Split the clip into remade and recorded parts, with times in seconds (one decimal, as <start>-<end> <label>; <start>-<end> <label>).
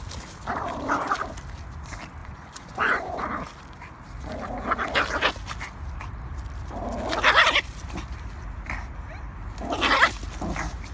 0.0-2.2 recorded; 2.2-3.2 remade; 3.2-10.9 recorded